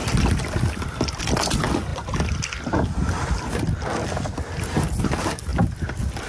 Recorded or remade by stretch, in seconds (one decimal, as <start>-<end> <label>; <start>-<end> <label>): 0.0-1.2 remade; 1.2-1.9 recorded; 1.9-4.2 remade; 4.2-6.3 recorded